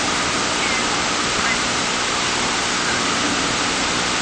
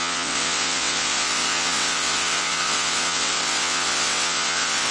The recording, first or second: first